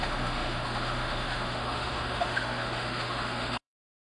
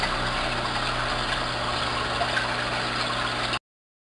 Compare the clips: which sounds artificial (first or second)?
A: first